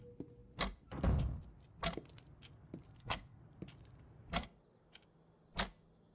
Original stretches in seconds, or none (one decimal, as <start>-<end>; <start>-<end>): 0.0-2.9; 3.4-6.1